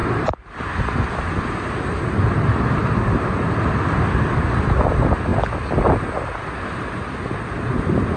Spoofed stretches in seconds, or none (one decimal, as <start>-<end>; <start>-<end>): none

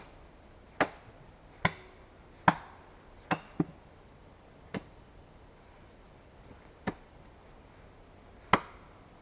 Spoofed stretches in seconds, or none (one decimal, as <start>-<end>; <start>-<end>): 4.2-7.2

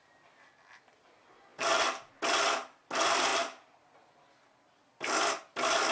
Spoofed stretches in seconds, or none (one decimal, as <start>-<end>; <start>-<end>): 3.3-3.8

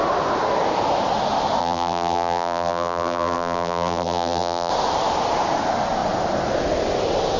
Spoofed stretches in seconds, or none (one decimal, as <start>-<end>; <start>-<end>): 1.6-4.7

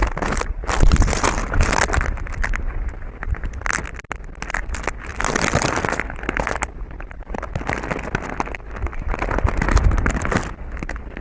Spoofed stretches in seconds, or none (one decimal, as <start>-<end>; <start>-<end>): 1.4-2.5; 5.1-5.7

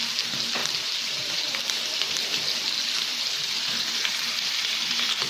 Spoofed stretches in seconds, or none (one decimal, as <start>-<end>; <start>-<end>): 0.6-2.3; 3.1-5.3